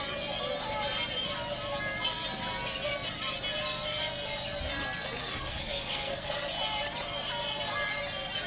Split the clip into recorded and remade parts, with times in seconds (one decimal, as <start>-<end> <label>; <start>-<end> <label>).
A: 0.0-5.2 recorded; 5.2-6.4 remade; 6.4-8.5 recorded